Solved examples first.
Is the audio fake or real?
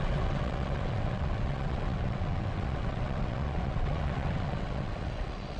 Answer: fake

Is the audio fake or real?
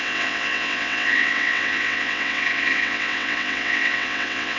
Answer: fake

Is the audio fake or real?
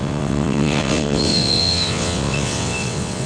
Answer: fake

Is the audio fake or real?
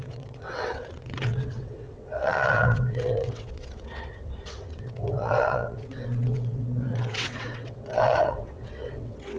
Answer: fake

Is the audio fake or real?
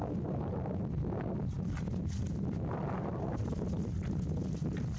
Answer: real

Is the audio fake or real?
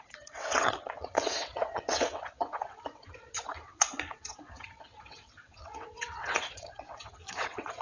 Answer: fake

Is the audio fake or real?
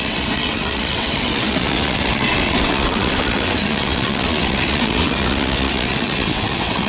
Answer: fake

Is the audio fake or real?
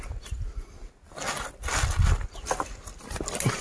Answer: real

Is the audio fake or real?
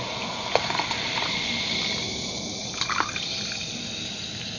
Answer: real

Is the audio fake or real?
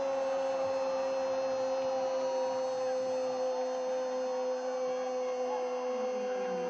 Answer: real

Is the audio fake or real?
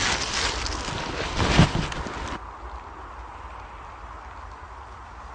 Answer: real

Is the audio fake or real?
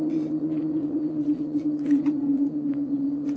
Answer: fake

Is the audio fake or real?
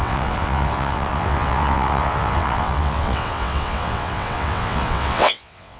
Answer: fake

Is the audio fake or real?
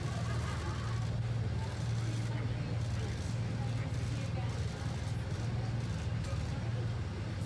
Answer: real